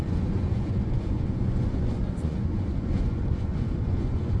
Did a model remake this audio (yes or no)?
yes